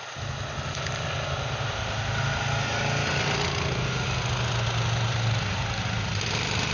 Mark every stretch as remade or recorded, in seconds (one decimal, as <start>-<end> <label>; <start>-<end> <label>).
0.0-5.5 recorded; 5.5-6.1 remade; 6.1-6.7 recorded